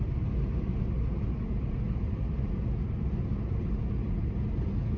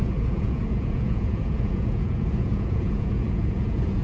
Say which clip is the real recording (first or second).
first